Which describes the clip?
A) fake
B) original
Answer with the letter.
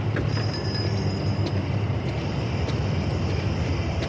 B